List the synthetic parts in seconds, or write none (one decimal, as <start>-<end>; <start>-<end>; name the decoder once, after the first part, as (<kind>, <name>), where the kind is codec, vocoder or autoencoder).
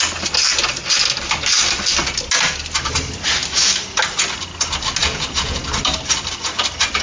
5.0-5.6 (vocoder, Vocos)